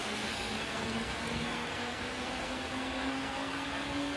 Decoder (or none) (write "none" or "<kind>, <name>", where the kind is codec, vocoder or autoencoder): codec, SNAC